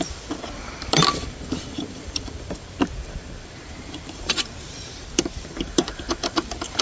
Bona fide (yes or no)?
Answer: no